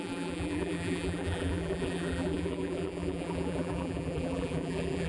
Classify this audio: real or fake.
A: fake